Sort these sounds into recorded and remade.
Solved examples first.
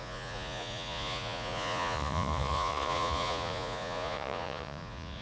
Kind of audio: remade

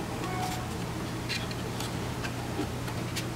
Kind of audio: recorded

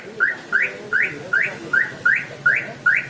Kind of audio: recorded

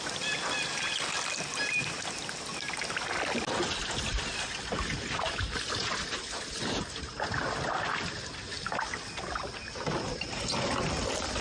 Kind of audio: recorded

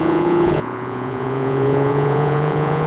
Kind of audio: remade